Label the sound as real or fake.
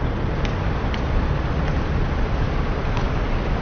real